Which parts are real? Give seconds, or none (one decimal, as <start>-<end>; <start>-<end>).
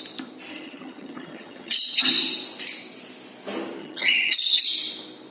0.0-0.5; 2.1-3.8; 4.6-5.3